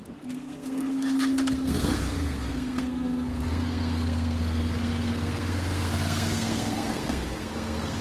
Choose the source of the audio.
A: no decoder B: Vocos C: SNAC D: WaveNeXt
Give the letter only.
C